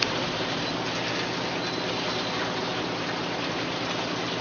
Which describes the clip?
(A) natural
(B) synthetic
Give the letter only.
A